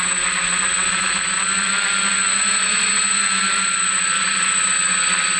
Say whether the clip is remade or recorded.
recorded